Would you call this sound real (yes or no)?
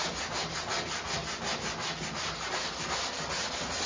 yes